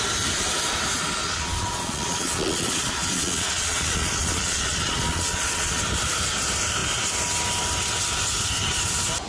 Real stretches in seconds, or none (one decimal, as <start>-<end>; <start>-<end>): 0.0-1.2; 5.8-9.3